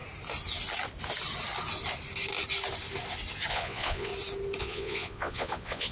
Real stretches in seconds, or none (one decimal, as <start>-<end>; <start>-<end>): 0.0-3.5; 4.1-4.6